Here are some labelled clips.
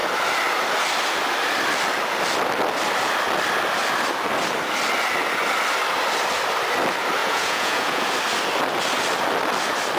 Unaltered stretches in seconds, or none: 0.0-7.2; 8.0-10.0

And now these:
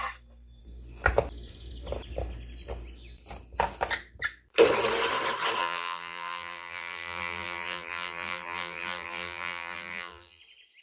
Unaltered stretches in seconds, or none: 0.0-5.6; 10.4-10.8